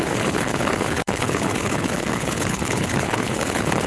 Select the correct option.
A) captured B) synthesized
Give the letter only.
B